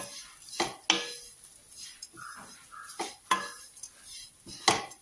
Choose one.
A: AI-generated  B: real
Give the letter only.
B